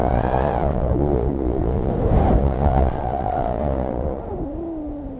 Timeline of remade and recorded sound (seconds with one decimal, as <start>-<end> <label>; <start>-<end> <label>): 0.0-1.9 remade; 1.9-2.4 recorded; 2.4-4.2 remade; 4.2-5.2 recorded